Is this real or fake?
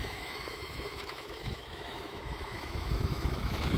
fake